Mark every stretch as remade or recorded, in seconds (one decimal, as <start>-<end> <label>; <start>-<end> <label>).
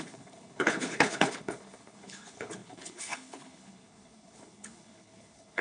0.0-5.6 remade